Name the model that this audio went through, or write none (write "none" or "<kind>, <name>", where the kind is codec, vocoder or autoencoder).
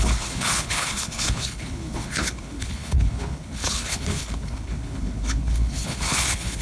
codec, HILCodec